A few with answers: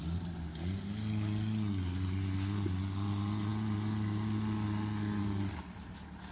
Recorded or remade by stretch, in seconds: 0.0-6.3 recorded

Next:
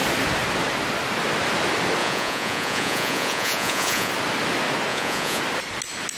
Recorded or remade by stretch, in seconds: 0.0-2.0 recorded; 2.0-4.1 remade; 4.1-4.9 recorded; 4.9-5.4 remade; 5.4-6.2 recorded

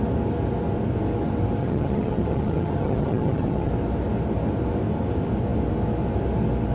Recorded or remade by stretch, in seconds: 0.0-1.6 recorded; 1.6-3.7 remade; 3.7-6.7 recorded

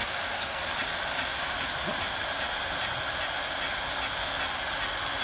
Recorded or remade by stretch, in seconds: 0.0-0.6 remade; 0.6-5.2 recorded

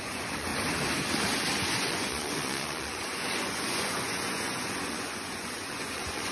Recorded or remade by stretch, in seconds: 0.0-0.5 remade; 0.5-1.7 recorded; 1.7-6.3 remade

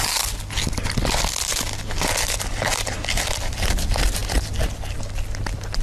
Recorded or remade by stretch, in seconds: 0.0-5.8 recorded

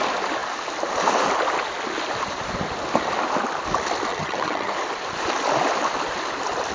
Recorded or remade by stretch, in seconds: 0.0-4.1 recorded; 4.1-4.7 remade; 4.7-6.7 recorded